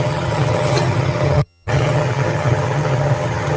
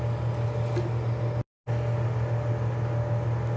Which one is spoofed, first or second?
first